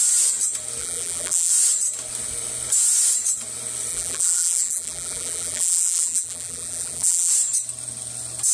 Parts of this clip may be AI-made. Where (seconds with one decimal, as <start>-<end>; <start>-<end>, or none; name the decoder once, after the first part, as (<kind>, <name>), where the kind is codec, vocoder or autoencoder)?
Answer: 0.8-1.5 (vocoder, BigVGAN v2); 3.9-7.3